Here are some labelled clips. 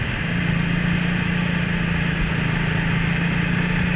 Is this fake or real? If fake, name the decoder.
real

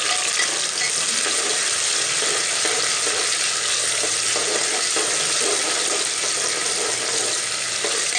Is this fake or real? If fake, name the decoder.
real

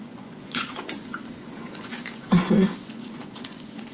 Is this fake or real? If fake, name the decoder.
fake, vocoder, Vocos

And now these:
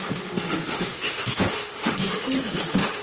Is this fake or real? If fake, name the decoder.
fake, autoencoder, DAC-VAE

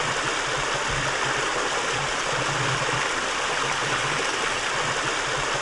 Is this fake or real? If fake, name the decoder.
real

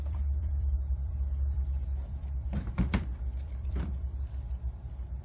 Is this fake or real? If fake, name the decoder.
fake, vocoder, BigVGAN v2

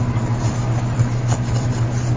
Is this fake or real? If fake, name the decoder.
real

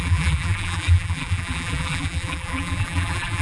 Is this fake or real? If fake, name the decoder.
fake, vocoder, BigVGAN v2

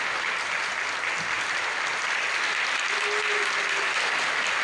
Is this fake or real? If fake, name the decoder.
real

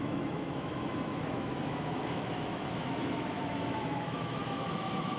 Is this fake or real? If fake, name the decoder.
fake, autoencoder, DAC-VAE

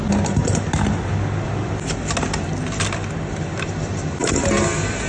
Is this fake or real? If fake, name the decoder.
real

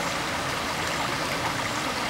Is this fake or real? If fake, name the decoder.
real